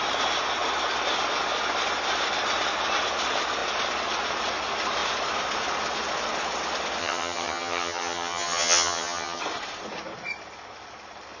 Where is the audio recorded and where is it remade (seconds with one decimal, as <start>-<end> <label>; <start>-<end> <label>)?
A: 0.0-7.0 recorded; 7.0-9.4 remade; 9.4-11.4 recorded